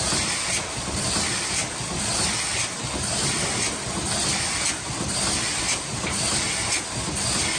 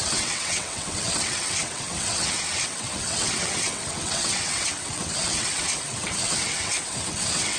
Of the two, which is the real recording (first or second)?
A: first